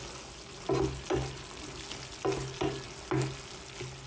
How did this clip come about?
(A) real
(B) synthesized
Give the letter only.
A